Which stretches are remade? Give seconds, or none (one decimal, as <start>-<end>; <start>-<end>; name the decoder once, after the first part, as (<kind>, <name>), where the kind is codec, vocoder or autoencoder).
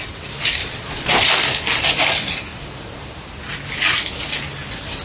0.6-1.3 (vocoder, Vocos)